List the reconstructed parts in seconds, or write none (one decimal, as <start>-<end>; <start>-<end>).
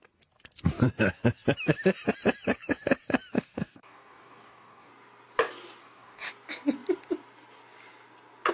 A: 3.3-4.9; 5.8-6.3